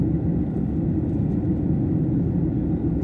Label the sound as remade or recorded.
recorded